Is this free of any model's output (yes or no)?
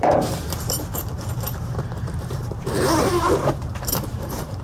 no